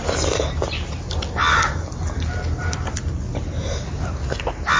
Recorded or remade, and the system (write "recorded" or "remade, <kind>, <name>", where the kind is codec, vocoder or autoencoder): recorded